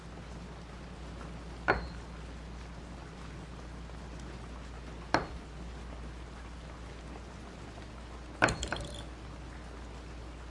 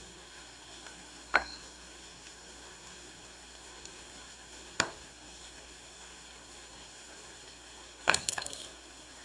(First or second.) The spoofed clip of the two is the second